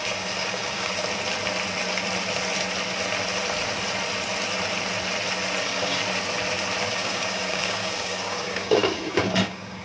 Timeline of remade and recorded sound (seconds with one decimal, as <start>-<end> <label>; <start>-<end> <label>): 0.0-1.0 remade; 1.0-5.6 recorded; 5.6-6.0 remade; 6.0-6.9 recorded; 6.9-9.8 remade